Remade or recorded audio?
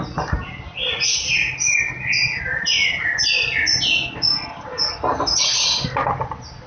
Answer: recorded